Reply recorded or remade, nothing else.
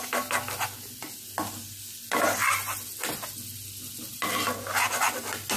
recorded